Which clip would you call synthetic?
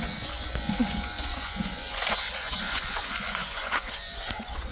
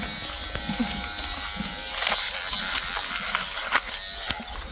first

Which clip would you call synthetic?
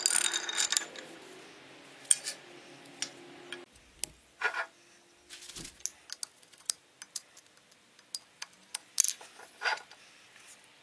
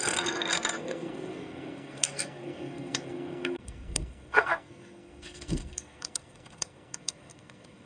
second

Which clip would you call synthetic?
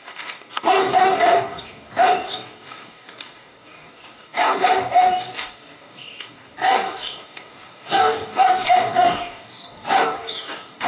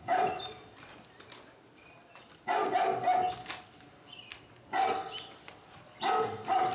first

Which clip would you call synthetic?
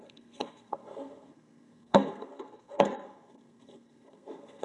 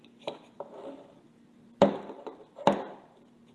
first